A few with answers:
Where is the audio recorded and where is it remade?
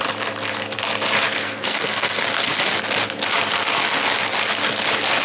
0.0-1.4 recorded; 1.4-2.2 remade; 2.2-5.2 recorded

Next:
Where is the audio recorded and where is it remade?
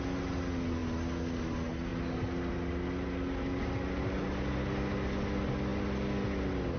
0.0-6.8 recorded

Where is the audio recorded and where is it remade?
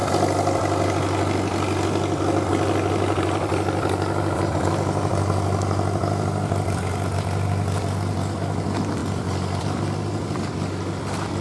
0.0-11.4 recorded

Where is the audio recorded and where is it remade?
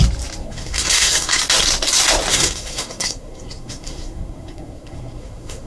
0.0-0.4 recorded; 0.4-1.4 remade; 1.4-2.3 recorded; 2.3-5.7 remade